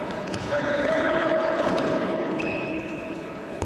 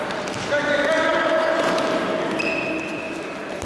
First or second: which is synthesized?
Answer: first